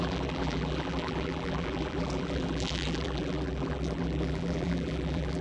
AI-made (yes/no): yes